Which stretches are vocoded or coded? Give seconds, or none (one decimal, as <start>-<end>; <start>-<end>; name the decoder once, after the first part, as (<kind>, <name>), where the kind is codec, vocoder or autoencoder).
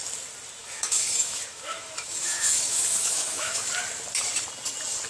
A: 0.6-3.7 (autoencoder, DAC-VAE)